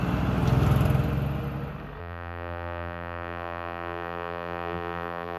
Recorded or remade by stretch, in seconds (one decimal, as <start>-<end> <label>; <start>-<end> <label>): 0.0-2.0 recorded; 2.0-5.4 remade